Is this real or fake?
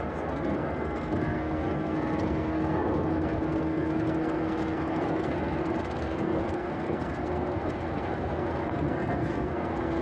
fake